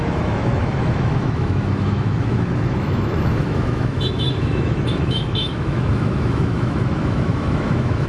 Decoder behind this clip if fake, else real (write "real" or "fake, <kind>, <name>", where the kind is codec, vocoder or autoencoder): fake, autoencoder, DAC-VAE